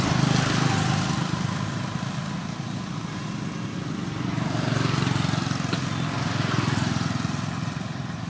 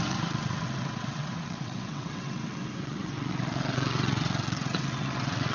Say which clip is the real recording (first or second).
first